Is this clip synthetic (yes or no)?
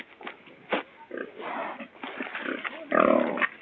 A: no